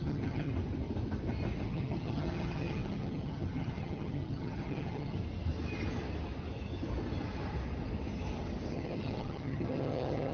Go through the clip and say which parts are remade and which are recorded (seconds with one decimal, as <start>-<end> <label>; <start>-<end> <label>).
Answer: 0.0-0.5 remade; 0.5-1.7 recorded; 1.7-5.2 remade; 5.2-8.7 recorded; 8.7-10.3 remade